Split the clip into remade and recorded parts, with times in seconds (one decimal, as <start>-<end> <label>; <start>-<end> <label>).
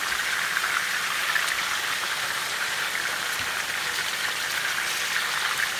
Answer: 0.0-5.8 recorded